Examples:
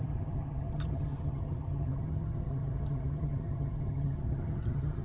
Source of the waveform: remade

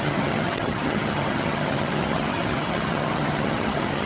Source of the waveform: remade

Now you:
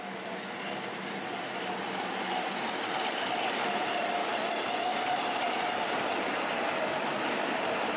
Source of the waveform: recorded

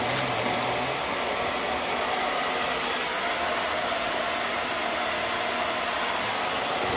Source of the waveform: recorded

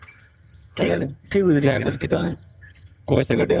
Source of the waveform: remade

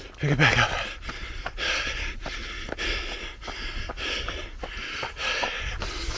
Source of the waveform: recorded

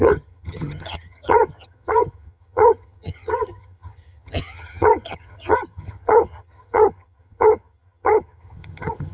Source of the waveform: remade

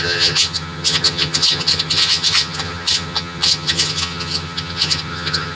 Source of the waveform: remade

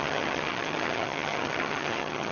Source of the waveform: remade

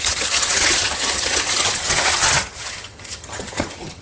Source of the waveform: remade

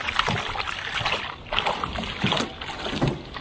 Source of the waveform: recorded